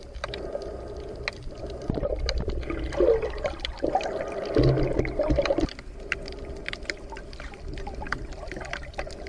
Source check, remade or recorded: recorded